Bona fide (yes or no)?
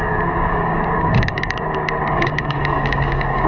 no